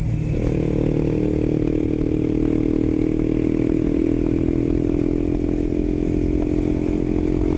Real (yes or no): yes